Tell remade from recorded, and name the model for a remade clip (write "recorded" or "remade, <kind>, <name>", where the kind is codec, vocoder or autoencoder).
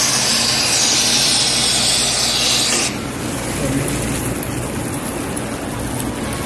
recorded